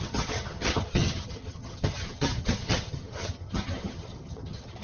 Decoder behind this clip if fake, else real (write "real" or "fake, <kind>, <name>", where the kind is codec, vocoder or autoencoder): fake, vocoder, HiFi-GAN